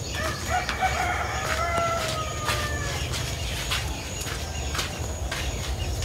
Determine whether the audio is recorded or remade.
recorded